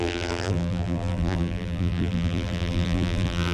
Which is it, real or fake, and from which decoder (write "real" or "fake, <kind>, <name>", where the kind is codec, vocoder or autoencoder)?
fake, vocoder, BigVGAN v2